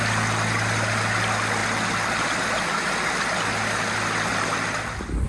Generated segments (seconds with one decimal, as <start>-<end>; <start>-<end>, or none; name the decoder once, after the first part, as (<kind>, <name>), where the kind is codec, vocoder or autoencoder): none